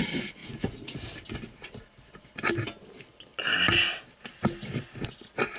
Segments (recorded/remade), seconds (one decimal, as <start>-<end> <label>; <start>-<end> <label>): 0.0-5.6 recorded